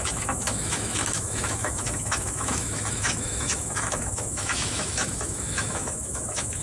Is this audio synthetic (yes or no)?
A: yes